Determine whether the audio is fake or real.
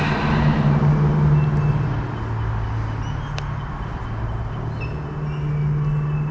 real